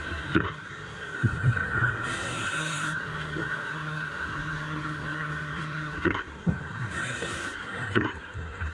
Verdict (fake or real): fake